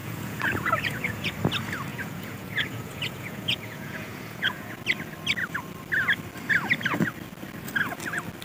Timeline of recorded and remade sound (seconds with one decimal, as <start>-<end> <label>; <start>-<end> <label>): 0.0-1.3 remade; 1.3-1.9 recorded; 1.9-4.8 remade; 4.8-8.4 recorded